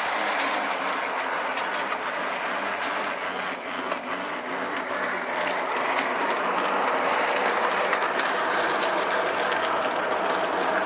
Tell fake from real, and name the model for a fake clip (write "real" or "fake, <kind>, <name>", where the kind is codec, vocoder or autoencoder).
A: real